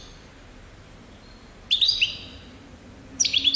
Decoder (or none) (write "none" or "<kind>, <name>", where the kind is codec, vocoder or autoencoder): vocoder, BigVGAN v2